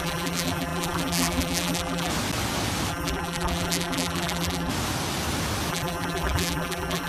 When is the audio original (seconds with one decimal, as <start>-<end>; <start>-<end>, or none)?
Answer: 2.1-2.9; 4.7-5.7